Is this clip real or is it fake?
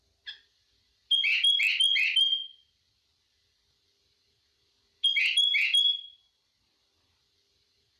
real